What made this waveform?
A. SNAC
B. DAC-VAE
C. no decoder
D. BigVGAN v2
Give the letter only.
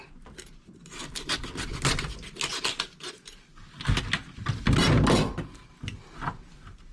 C